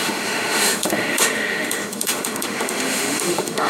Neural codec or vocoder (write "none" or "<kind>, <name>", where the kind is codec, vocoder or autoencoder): autoencoder, DAC-VAE